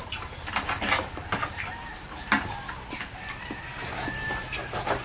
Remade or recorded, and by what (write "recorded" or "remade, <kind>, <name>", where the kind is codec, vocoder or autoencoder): recorded